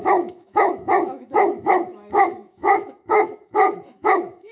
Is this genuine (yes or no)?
no